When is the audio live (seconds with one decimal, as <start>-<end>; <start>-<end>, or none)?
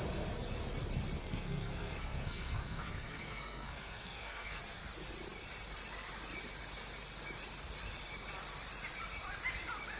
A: 0.0-1.2; 4.6-10.0